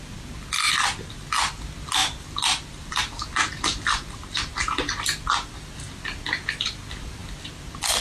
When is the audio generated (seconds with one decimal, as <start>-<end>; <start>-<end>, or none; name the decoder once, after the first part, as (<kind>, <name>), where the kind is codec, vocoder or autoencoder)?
none